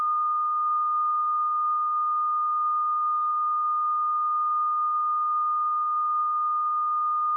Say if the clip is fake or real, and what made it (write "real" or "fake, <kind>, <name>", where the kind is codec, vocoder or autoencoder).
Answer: fake, codec, SNAC